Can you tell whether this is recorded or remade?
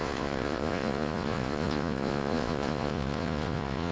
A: remade